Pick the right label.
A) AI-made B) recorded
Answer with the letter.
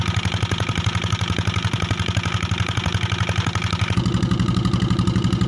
B